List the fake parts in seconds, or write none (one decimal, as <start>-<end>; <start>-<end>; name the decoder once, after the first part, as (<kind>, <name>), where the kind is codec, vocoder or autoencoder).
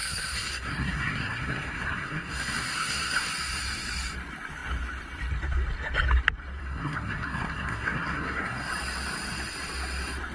0.0-3.3 (codec, SNAC); 6.6-8.7